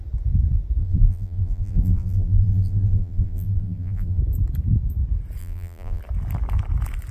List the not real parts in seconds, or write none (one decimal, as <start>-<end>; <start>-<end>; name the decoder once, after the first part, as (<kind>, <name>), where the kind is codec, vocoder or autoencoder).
0.8-4.2 (vocoder, BigVGAN v2); 5.4-6.0